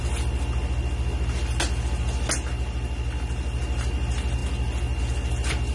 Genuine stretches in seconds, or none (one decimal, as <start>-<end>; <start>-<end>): 0.0-5.7